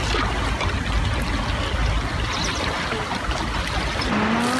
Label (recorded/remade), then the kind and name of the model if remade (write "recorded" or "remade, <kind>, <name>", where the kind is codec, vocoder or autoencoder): recorded